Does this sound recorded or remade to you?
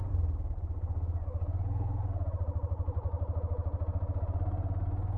recorded